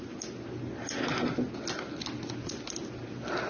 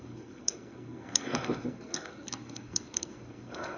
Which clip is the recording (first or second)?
first